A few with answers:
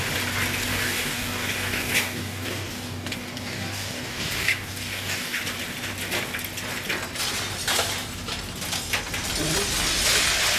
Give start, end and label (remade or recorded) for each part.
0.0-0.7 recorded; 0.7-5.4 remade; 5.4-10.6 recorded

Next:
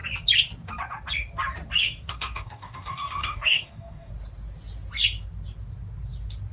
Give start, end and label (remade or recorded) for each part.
0.0-1.8 recorded; 1.8-4.1 remade; 4.1-6.5 recorded

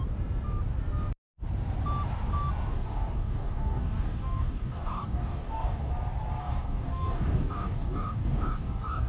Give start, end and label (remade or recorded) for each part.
0.0-2.7 recorded; 2.7-5.9 remade; 5.9-6.4 recorded; 6.4-9.1 remade